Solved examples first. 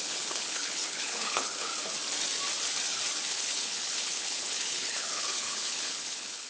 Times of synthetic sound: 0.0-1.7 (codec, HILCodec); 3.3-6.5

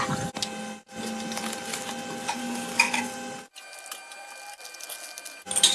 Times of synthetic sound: 2.4-3.0 (codec, DAC)

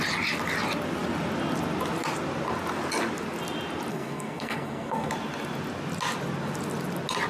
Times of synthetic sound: 3.9-5.1 (codec, SNAC)

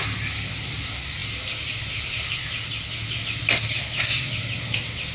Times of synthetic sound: none

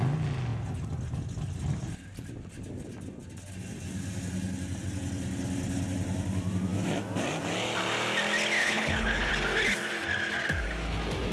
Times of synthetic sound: 8.6-9.3 (codec, HILCodec)